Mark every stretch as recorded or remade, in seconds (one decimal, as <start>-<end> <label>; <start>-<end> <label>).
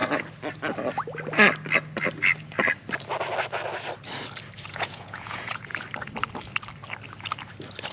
0.0-4.7 recorded; 4.7-5.7 remade; 5.7-7.9 recorded